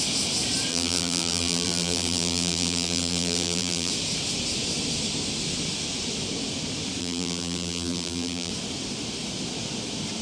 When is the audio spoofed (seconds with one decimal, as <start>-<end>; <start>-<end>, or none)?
0.7-3.9; 7.0-8.5